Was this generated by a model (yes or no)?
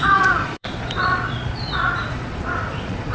yes